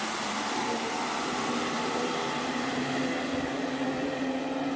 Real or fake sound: fake